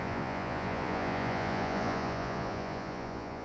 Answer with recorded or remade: remade